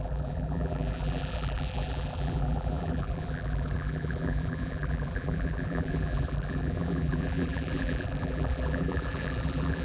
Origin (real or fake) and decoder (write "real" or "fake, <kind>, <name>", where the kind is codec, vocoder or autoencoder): fake, vocoder, BigVGAN v2